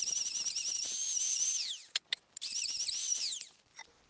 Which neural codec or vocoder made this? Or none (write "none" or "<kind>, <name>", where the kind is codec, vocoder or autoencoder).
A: none